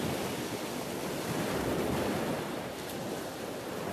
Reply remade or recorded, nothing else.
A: recorded